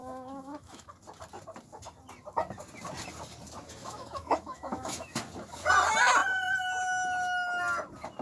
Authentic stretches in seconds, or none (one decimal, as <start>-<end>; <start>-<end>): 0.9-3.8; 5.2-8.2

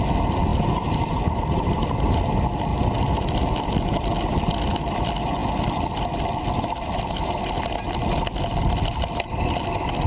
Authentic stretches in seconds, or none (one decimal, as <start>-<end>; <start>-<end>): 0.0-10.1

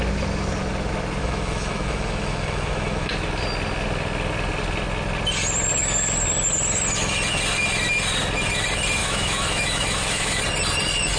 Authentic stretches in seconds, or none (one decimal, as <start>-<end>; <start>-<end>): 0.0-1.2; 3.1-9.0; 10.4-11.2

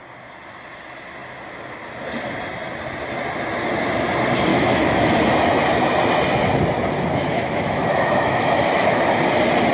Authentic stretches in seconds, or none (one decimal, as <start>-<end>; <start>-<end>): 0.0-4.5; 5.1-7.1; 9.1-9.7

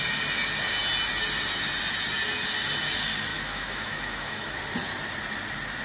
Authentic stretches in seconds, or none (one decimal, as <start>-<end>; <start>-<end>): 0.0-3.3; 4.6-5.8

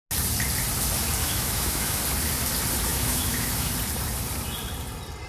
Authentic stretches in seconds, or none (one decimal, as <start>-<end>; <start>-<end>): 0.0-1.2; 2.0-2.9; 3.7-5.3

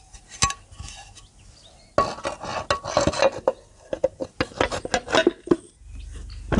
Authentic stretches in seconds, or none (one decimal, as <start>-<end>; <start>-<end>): 0.0-6.6

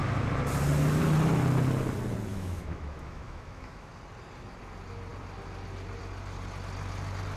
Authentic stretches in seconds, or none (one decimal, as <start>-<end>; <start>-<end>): 0.0-2.3; 3.9-7.4